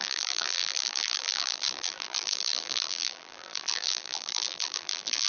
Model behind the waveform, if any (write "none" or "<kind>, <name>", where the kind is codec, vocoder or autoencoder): vocoder, BigVGAN v2